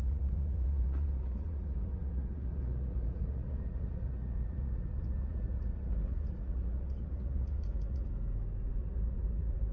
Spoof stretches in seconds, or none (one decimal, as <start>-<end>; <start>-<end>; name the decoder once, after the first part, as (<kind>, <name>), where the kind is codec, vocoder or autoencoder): 0.0-8.1 (vocoder, Vocos); 8.8-9.7